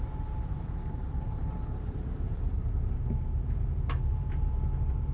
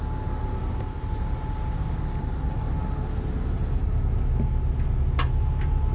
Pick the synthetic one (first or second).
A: first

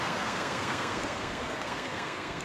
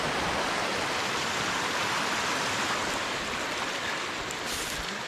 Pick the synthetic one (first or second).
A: first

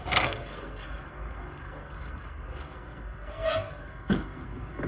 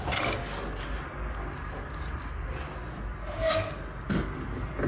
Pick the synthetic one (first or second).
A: first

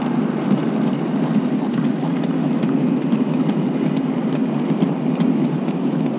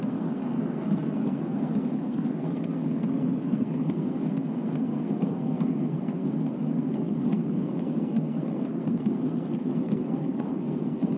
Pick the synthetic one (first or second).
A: second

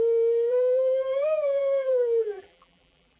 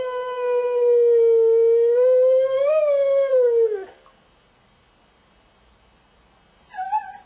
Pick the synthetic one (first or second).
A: first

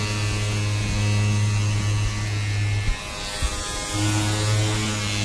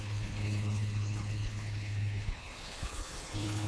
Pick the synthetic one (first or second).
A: second